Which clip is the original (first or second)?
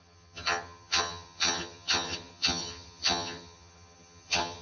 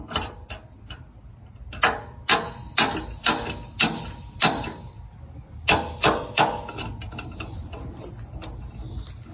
second